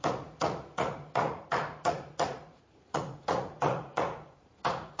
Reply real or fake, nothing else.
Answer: fake